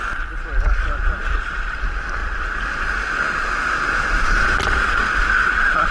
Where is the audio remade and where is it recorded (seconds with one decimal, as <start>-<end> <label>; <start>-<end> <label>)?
0.0-5.9 recorded